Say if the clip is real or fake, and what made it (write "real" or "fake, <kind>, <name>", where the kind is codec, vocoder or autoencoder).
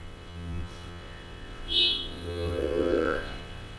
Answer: fake, vocoder, WaveNeXt